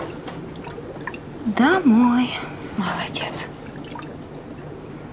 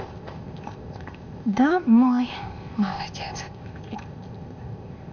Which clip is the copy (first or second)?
second